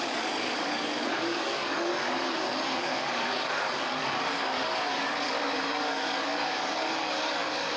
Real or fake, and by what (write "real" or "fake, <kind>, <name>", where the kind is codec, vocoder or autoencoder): fake, codec, DAC